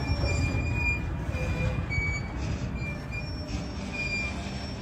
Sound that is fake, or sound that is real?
real